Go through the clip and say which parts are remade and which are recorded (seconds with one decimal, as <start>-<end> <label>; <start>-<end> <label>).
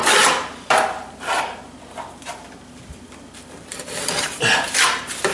0.0-3.7 recorded; 3.7-4.5 remade; 4.5-5.3 recorded